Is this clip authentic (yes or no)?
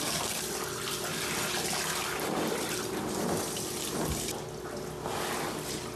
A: yes